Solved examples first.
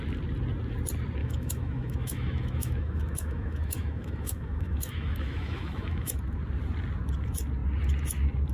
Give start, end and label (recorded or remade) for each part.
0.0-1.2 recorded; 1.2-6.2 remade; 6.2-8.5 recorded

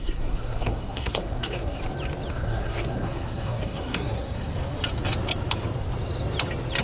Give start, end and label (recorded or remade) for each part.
0.0-1.8 remade; 1.8-2.3 recorded; 2.3-4.5 remade; 4.5-6.8 recorded

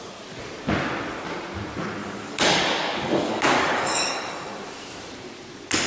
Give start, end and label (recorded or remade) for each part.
0.0-2.0 recorded; 2.0-4.3 remade; 4.3-5.9 recorded

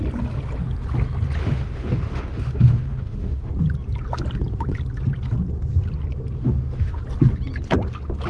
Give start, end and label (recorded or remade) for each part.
0.0-1.4 recorded; 1.4-3.5 remade; 3.5-6.4 recorded; 6.4-7.0 remade; 7.0-8.3 recorded